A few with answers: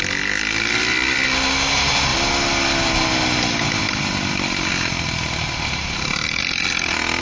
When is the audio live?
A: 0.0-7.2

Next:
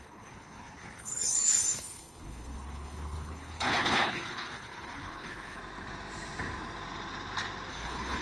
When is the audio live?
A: 5.6-7.7

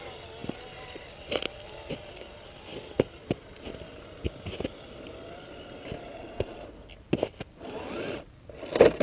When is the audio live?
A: 0.0-6.1; 6.6-9.0

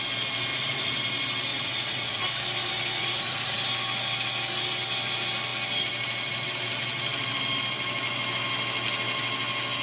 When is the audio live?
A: 0.0-0.5; 1.0-1.5; 2.3-3.0; 3.6-9.8

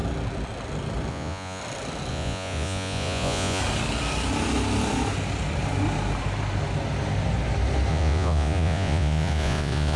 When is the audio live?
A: 0.0-1.1; 1.6-2.1; 3.6-7.9

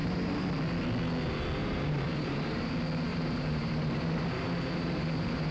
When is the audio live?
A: 0.5-1.6; 2.7-3.1

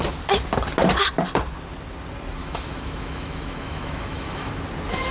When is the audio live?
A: 0.0-2.4; 4.5-5.1